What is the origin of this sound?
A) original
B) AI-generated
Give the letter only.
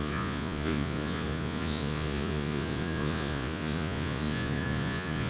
B